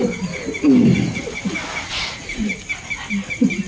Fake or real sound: fake